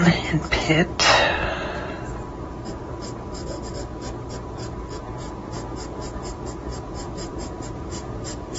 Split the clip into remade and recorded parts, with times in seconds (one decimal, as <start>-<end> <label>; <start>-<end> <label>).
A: 0.0-0.6 remade; 0.6-5.0 recorded; 5.0-8.6 remade